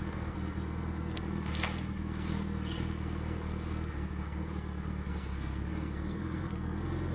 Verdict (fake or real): fake